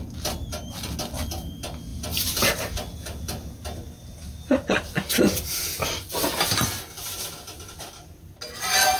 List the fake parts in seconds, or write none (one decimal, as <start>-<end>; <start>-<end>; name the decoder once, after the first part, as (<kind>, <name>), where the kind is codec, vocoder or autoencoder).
none

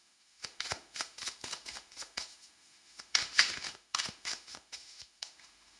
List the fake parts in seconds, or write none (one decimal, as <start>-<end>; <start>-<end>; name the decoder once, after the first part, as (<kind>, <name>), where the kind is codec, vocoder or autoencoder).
0.0-5.8 (autoencoder, DAC-VAE)

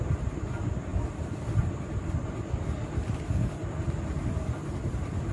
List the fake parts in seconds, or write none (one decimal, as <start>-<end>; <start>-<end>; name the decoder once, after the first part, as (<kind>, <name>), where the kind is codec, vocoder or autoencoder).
none

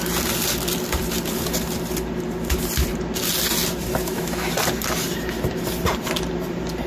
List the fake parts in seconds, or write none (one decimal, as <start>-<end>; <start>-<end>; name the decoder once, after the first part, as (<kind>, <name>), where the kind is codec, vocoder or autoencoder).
4.0-4.5 (autoencoder, DAC-VAE)

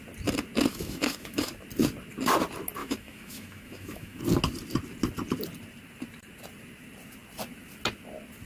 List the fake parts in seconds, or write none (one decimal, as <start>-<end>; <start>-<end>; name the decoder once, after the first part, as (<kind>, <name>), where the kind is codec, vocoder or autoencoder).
0.7-1.5 (autoencoder, DAC-VAE); 2.8-4.2